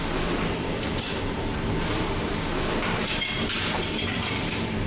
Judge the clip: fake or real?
fake